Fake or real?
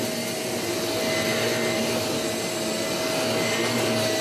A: real